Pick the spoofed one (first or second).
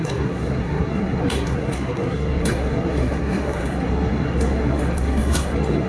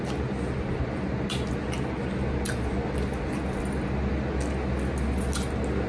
first